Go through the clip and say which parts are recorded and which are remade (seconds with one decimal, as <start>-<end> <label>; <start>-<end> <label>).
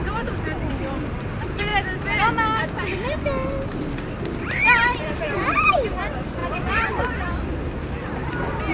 0.0-1.7 remade; 1.7-4.3 recorded; 4.3-8.7 remade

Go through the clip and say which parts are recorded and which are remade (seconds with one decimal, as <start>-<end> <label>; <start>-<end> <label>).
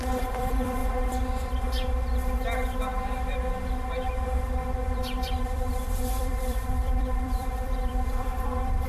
0.0-0.8 remade; 0.8-5.0 recorded; 5.0-8.9 remade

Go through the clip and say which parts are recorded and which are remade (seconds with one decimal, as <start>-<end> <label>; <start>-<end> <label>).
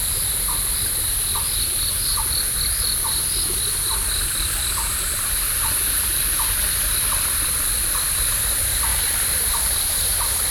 0.0-8.9 recorded; 8.9-10.1 remade; 10.1-10.5 recorded